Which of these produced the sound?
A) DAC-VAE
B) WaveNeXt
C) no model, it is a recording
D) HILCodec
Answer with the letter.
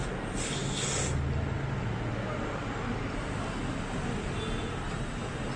C